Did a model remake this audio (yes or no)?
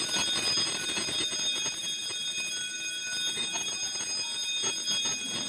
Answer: no